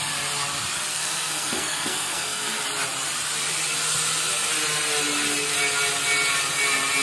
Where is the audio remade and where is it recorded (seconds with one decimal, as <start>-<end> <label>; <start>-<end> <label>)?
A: 0.0-0.9 recorded; 0.9-2.6 remade; 2.6-7.0 recorded